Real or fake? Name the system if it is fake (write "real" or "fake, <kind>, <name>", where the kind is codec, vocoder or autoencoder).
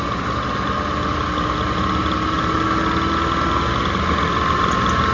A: real